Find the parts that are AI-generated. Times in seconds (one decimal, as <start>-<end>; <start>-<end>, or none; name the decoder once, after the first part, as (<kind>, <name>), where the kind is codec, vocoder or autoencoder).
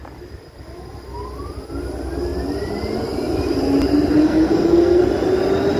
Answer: 4.2-5.0 (codec, SNAC)